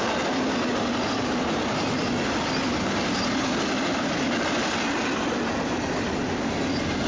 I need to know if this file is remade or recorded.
recorded